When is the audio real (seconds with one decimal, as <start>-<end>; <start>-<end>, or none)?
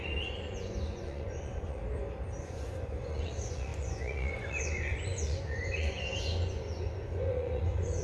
1.8-2.4